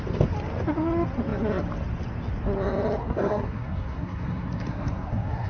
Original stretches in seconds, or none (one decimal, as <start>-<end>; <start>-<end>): 0.0-3.0